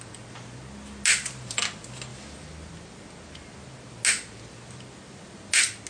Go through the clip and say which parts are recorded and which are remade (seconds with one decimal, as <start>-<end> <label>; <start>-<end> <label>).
0.0-5.9 recorded